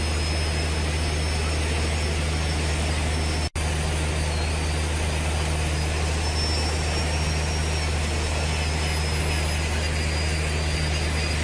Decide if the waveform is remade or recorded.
recorded